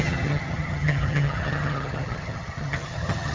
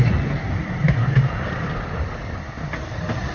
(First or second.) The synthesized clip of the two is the first